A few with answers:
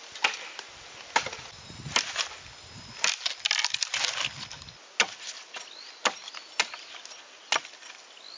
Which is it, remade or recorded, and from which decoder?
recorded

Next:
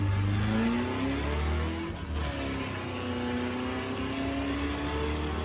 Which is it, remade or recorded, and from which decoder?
recorded